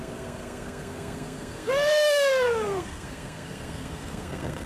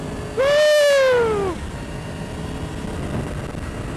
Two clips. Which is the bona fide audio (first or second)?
second